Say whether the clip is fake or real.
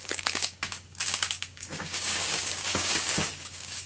fake